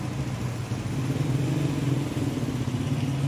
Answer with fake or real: real